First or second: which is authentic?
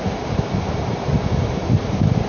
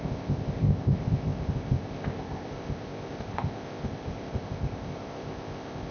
first